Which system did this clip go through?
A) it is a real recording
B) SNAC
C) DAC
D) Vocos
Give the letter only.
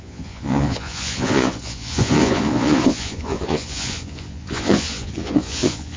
D